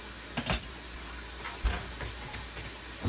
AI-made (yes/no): no